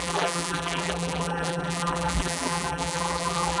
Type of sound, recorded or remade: remade